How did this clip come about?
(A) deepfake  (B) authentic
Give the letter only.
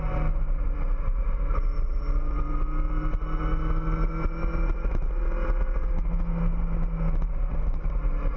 B